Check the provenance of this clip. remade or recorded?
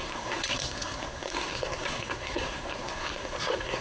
remade